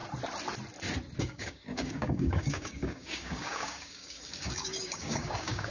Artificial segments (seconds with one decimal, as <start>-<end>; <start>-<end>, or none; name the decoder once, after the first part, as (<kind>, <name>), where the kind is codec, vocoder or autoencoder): 1.2-5.7 (codec, DAC)